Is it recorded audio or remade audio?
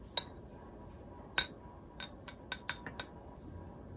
recorded